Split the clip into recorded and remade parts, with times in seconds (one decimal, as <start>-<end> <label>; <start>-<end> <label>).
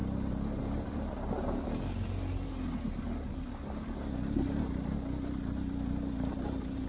0.0-6.9 recorded